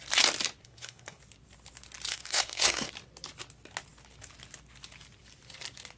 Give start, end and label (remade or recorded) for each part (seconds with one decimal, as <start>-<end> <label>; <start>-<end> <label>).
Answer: 0.0-0.6 recorded; 0.6-1.2 remade; 1.2-2.1 recorded; 2.1-2.9 remade; 2.9-6.0 recorded